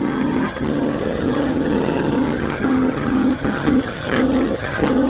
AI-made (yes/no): yes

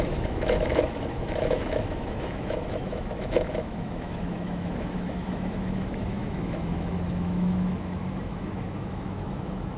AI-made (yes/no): yes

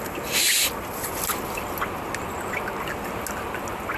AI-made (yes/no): no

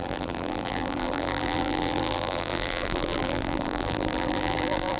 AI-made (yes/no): yes